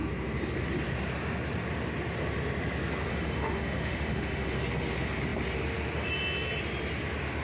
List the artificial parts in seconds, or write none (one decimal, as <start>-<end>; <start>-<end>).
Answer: 3.1-4.6

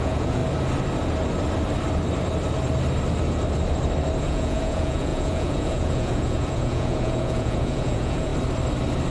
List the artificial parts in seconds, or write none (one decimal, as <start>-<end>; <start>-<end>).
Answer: 0.0-0.4; 4.2-8.3

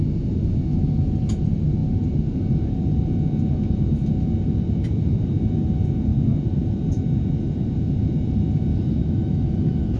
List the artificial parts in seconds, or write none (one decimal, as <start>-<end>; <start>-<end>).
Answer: 9.0-10.0

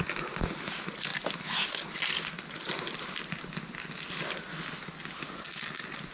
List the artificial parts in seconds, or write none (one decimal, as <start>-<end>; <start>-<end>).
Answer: none